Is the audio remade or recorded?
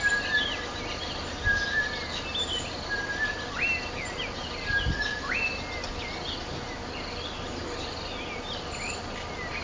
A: recorded